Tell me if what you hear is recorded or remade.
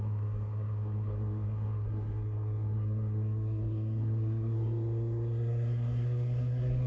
remade